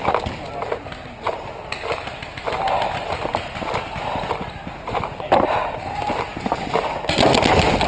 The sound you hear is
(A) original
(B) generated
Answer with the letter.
A